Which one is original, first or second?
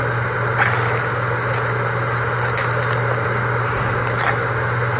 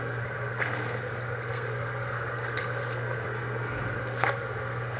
first